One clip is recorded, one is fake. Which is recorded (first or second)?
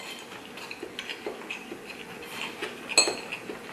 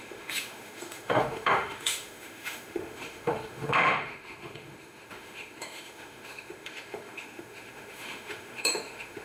first